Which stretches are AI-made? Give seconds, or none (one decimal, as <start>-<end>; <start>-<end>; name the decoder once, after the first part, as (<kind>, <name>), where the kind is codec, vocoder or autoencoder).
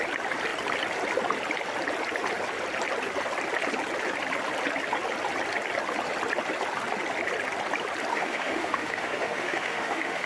8.1-10.3 (autoencoder, DAC-VAE)